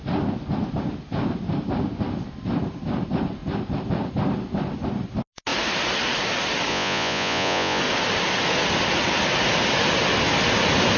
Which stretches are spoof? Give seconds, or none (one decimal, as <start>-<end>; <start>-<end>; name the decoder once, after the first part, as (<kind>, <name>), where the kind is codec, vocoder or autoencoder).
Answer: 6.7-7.8 (vocoder, Vocos)